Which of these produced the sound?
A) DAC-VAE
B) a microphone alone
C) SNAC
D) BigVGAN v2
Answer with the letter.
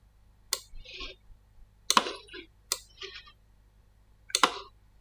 B